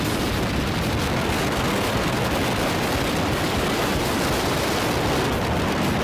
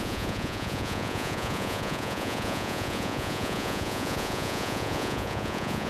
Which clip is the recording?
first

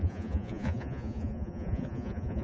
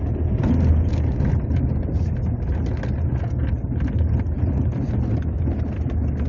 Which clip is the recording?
second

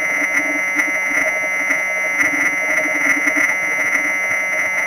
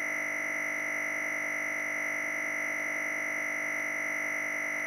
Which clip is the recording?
second